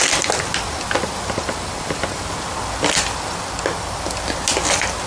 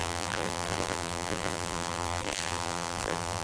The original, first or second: first